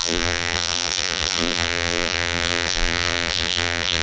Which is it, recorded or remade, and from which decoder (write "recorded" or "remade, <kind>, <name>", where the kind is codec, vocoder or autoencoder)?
remade, vocoder, BigVGAN v2